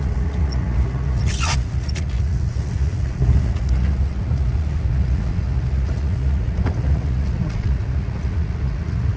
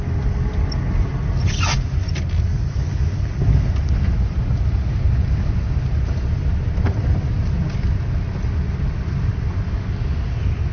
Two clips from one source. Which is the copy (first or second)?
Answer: first